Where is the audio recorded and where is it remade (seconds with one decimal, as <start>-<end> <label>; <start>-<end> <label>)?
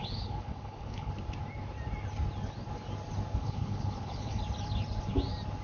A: 0.0-1.1 remade; 1.1-3.4 recorded; 3.4-4.4 remade; 4.4-5.6 recorded